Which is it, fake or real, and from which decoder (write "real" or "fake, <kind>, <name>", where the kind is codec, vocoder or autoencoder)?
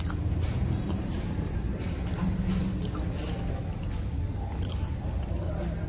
fake, vocoder, BigVGAN v2